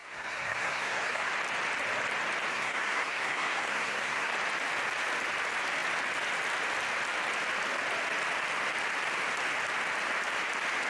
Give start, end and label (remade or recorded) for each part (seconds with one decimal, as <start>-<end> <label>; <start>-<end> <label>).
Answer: 0.0-1.3 remade; 1.3-2.5 recorded; 2.5-4.3 remade; 4.3-10.9 recorded